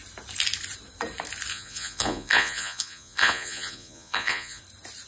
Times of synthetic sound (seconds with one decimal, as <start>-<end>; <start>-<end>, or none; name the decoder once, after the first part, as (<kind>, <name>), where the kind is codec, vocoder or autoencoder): 1.5-4.6 (vocoder, Vocos)